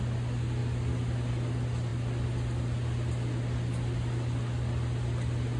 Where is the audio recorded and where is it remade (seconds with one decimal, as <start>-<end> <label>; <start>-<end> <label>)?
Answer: 0.0-5.6 recorded